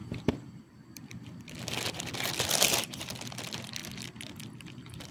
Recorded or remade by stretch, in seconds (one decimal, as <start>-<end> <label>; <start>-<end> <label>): 0.0-3.8 remade; 3.8-4.6 recorded; 4.6-5.1 remade